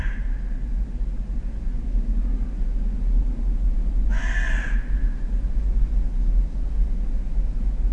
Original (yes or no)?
yes